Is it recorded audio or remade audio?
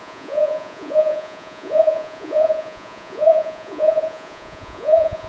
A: remade